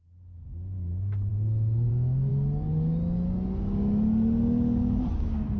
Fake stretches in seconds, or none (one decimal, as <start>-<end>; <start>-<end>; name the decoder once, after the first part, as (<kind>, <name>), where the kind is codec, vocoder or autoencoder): 1.3-1.9 (autoencoder, DAC-VAE)